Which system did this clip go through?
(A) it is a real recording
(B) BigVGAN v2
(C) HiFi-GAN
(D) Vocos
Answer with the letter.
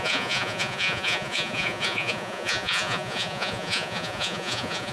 D